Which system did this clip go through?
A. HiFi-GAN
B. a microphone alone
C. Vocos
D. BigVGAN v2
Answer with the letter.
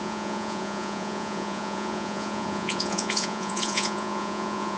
C